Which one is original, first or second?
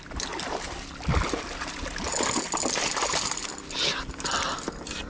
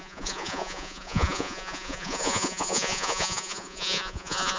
first